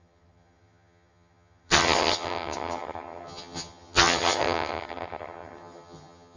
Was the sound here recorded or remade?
remade